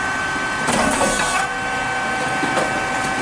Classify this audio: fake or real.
real